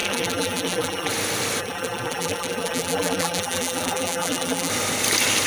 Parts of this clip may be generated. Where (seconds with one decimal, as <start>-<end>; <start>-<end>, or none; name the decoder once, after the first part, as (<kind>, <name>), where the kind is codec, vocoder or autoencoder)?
0.0-1.1 (vocoder, BigVGAN v2); 1.6-4.7